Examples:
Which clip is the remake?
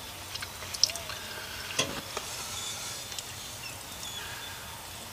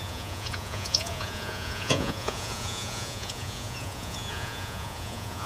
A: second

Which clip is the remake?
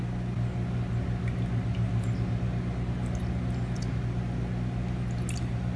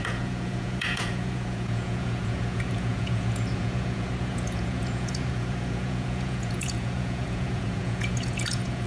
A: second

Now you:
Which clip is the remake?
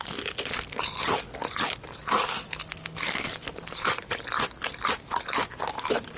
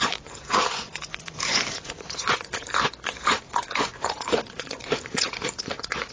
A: second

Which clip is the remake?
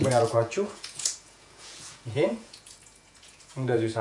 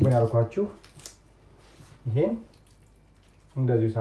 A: first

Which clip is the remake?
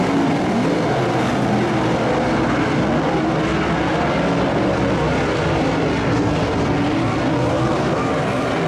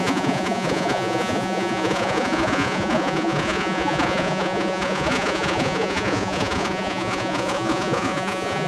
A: second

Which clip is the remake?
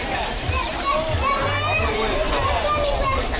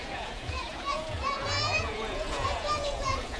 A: second